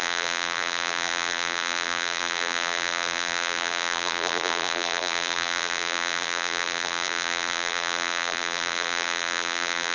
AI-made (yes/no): yes